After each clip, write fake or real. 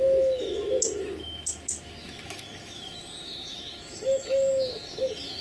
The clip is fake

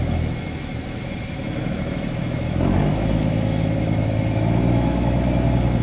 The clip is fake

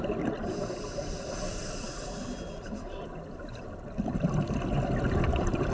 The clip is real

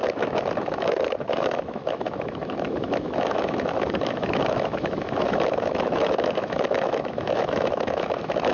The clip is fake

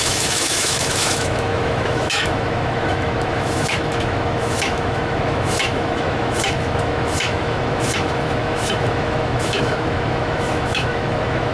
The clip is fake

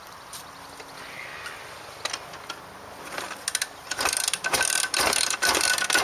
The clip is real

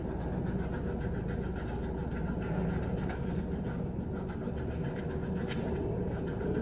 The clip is real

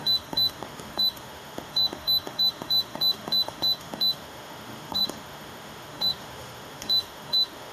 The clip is fake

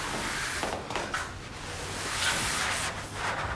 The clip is real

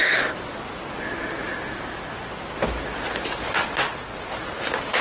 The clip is real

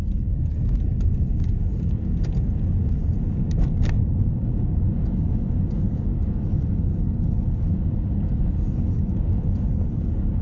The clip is real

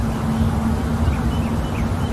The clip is real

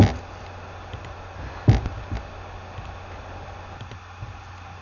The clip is real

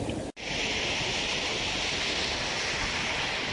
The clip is real